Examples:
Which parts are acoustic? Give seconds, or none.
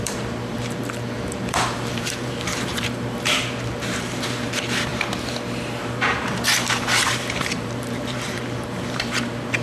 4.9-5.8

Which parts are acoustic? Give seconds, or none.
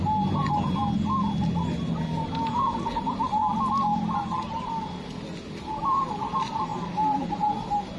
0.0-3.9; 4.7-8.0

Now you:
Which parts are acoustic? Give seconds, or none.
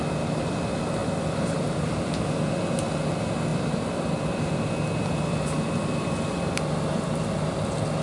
0.0-1.0; 2.1-3.5; 4.7-8.0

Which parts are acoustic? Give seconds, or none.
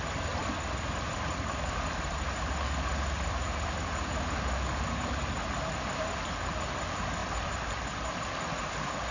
0.0-7.2; 8.6-9.1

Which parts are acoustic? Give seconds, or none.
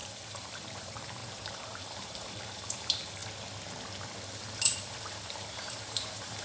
3.2-4.5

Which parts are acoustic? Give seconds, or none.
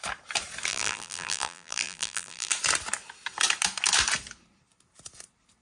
0.0-0.7; 2.5-5.6